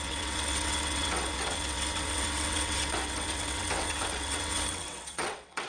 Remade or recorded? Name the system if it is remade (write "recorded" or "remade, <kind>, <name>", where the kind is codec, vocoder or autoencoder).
remade, vocoder, WaveNeXt